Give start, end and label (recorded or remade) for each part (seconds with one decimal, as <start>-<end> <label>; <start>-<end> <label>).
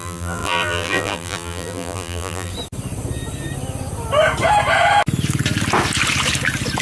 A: 0.0-2.5 remade; 2.5-6.8 recorded